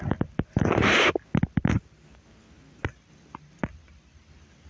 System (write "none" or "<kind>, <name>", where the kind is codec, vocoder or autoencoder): none